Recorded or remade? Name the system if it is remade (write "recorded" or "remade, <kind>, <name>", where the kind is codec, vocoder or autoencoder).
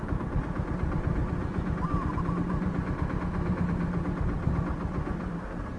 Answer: recorded